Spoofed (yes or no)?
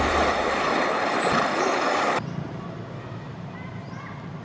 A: no